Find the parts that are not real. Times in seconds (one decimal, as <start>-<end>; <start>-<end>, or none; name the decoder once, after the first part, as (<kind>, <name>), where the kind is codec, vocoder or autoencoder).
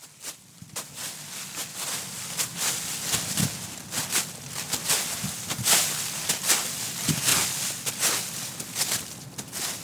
none